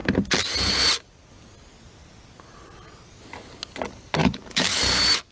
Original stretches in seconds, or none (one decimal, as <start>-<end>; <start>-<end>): 0.0-4.2; 4.8-5.3